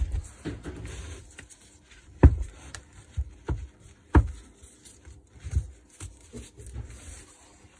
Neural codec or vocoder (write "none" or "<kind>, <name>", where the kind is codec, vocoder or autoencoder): none